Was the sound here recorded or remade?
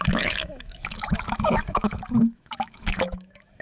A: remade